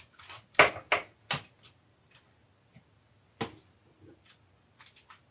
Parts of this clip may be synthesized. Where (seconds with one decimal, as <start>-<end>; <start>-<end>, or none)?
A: none